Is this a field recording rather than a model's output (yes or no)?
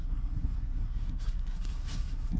no